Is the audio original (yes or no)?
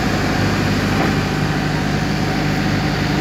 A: yes